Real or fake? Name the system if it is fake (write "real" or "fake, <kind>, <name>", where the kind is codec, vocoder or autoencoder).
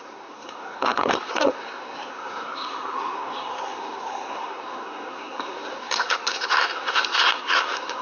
fake, codec, SNAC